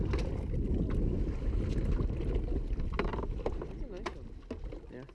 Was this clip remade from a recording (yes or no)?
no